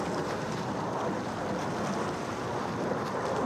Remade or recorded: recorded